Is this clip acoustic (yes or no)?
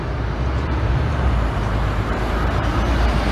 no